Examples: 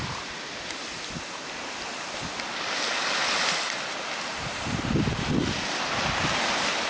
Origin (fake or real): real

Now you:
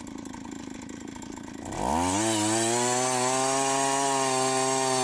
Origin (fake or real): real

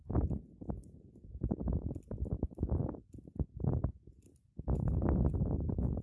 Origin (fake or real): real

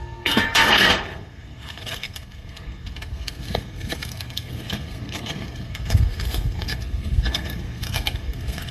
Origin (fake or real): fake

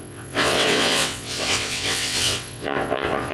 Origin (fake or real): fake